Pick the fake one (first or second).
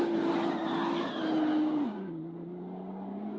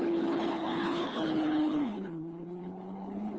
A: second